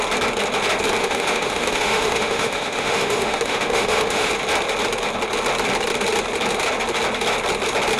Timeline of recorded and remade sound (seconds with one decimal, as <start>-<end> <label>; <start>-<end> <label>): 0.0-1.0 recorded; 1.0-4.3 remade; 4.3-8.0 recorded